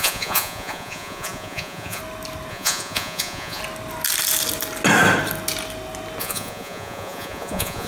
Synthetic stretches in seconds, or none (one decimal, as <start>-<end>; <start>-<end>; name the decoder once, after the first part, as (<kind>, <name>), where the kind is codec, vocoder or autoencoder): 0.0-2.0 (vocoder, Vocos); 2.5-3.6; 6.2-7.9